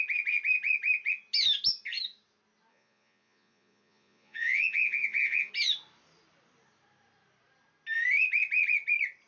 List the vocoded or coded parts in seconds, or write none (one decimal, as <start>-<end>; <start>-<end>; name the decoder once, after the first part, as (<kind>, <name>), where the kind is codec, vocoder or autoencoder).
2.7-5.5 (vocoder, Vocos)